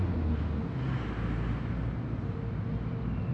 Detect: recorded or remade recorded